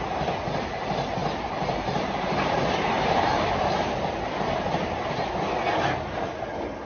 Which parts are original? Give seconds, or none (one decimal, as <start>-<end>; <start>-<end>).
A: 0.0-1.2; 5.3-6.9